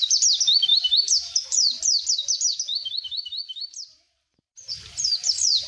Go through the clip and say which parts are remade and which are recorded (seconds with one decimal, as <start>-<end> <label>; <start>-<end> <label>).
0.0-0.7 recorded; 0.7-1.8 remade; 1.8-2.8 recorded; 2.8-5.7 remade